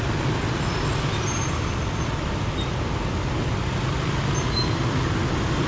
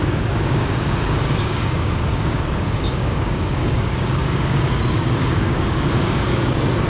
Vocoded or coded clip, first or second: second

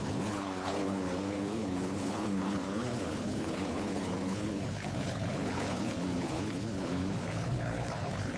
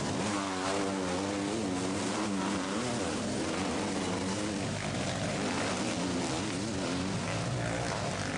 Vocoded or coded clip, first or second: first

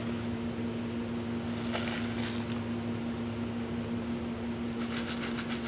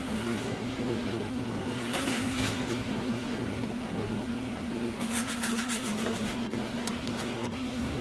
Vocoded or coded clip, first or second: second